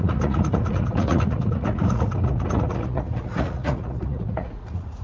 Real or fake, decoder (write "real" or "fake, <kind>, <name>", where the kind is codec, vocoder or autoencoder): fake, vocoder, Vocos